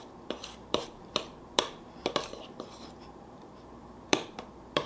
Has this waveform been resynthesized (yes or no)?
yes